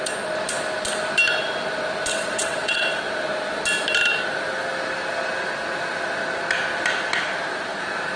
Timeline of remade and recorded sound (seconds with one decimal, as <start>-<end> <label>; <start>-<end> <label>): 0.0-2.1 recorded; 2.1-3.0 remade; 3.0-8.2 recorded